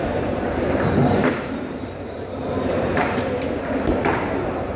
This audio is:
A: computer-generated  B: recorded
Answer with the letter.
A